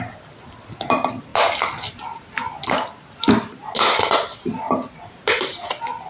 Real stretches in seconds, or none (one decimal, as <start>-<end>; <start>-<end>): 0.0-6.1